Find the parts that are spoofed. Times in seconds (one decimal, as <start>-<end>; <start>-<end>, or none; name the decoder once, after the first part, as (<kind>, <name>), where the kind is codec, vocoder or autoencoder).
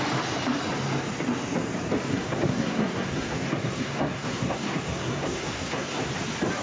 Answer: 2.1-6.1 (codec, SNAC)